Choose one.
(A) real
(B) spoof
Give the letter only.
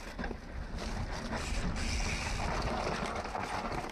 A